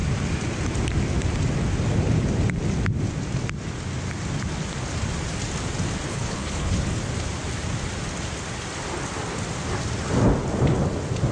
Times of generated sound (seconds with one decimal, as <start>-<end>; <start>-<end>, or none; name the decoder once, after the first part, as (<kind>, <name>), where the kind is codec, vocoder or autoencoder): 6.1-6.8 (codec, HILCodec)